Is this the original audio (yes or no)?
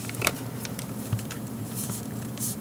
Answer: no